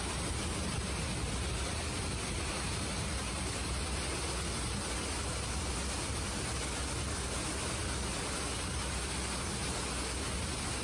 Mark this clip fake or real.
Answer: real